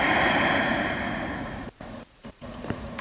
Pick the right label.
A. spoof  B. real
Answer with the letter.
A